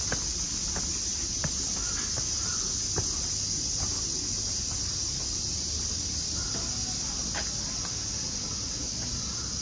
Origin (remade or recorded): recorded